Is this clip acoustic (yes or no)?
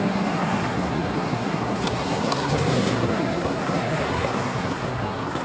no